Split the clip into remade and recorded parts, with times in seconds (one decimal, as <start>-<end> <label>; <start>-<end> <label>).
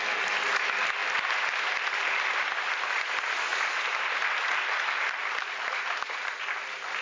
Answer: 0.0-3.5 remade; 3.5-4.1 recorded; 4.1-7.0 remade